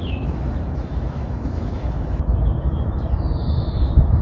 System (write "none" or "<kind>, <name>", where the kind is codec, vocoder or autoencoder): autoencoder, DAC-VAE